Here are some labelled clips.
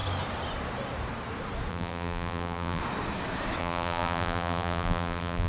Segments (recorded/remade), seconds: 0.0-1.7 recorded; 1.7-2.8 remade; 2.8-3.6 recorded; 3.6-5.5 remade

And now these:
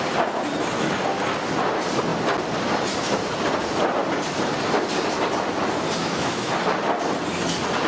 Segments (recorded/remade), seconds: 0.0-6.0 recorded; 6.0-6.5 remade; 6.5-7.9 recorded

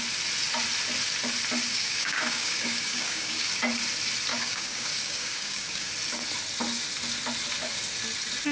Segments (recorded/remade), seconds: 0.0-1.7 recorded; 1.7-3.5 remade; 3.5-4.3 recorded; 4.3-5.9 remade; 5.9-8.5 recorded

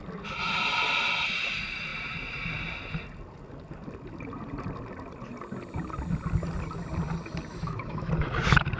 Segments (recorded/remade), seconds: 0.0-7.5 recorded; 7.5-8.1 remade; 8.1-8.8 recorded

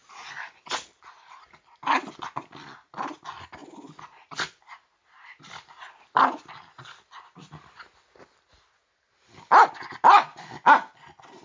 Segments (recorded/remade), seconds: 0.0-11.4 recorded

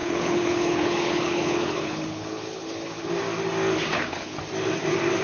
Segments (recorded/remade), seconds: 0.0-3.1 remade; 3.1-3.9 recorded; 3.9-4.4 remade; 4.4-5.2 recorded